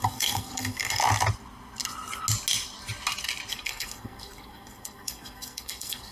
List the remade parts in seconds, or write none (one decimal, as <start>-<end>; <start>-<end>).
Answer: 0.0-1.0; 3.5-6.1